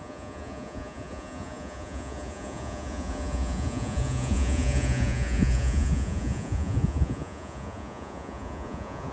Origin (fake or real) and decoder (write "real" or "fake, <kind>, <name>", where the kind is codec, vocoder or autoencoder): fake, vocoder, Vocos